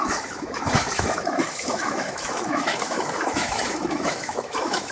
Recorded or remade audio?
remade